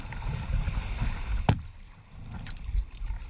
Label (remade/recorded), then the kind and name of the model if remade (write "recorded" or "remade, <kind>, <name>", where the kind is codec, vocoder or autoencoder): recorded